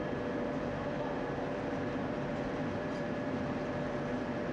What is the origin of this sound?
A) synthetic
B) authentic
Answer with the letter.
A